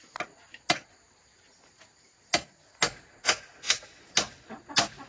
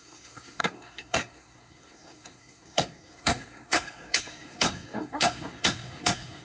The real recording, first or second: first